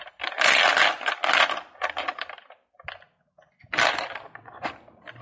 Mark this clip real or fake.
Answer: real